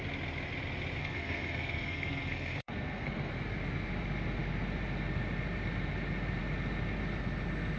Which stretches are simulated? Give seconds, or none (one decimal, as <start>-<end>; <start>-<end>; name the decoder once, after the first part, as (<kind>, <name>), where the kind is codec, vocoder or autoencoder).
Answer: 1.0-3.3 (codec, SNAC)

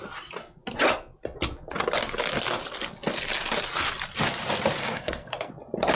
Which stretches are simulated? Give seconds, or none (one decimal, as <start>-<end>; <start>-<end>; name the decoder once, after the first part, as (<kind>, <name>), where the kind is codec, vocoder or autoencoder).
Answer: 4.8-5.5 (codec, SNAC)

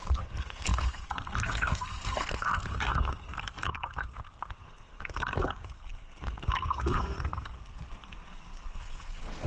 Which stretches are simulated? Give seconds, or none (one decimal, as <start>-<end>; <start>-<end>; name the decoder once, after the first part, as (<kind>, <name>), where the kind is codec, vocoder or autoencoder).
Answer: 0.0-9.5 (codec, SNAC)

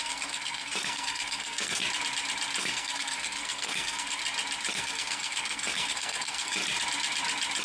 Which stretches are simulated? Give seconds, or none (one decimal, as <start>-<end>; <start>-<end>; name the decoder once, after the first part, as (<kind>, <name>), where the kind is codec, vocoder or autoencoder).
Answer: 0.0-1.8 (codec, SNAC); 2.6-4.2; 4.7-6.6

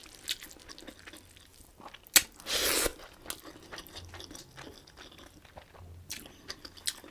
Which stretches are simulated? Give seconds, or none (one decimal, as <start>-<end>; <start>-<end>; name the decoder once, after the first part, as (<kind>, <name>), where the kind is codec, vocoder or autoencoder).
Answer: none

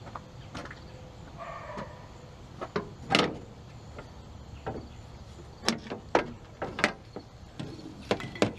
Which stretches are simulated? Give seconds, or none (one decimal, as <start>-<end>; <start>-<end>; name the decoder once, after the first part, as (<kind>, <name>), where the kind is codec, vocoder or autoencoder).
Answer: none

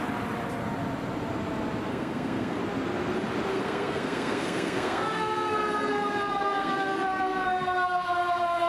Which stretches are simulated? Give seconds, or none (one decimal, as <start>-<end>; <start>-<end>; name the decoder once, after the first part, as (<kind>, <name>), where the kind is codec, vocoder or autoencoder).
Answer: 1.9-2.6 (codec, SNAC); 3.5-8.7

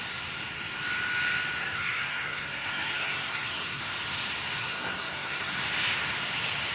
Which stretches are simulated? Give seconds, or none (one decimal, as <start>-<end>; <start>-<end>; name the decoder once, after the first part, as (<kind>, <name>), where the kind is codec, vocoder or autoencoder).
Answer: 1.6-3.8 (codec, SNAC); 4.6-5.6